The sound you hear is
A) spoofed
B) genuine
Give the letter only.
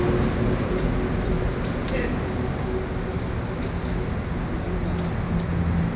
B